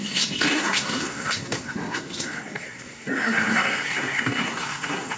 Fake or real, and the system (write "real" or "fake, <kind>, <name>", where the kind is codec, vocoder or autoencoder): fake, codec, SNAC